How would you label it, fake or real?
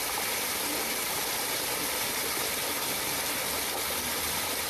real